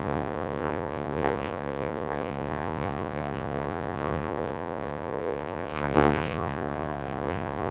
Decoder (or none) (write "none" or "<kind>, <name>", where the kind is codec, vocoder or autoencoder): vocoder, Vocos